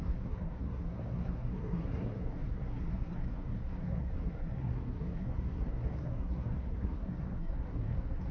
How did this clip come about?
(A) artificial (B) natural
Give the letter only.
A